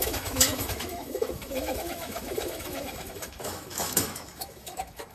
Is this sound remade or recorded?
remade